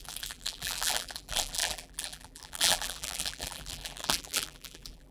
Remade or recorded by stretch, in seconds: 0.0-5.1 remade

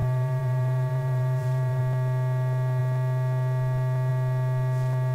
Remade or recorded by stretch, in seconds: 0.0-1.8 remade; 1.8-5.1 recorded

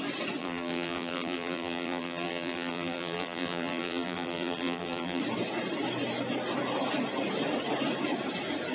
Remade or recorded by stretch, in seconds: 0.0-0.4 recorded; 0.4-5.2 remade; 5.2-8.7 recorded